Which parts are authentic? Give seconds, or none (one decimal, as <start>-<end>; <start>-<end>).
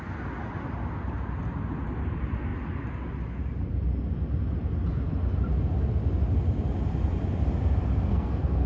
0.0-8.1